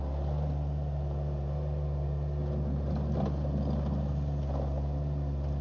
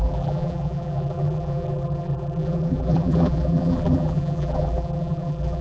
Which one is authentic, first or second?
first